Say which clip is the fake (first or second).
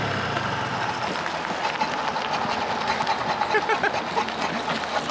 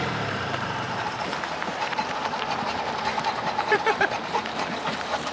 second